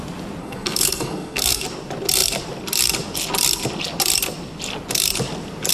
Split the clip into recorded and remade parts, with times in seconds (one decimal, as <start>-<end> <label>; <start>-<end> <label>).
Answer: 0.0-0.4 recorded; 0.4-1.6 remade; 1.6-5.7 recorded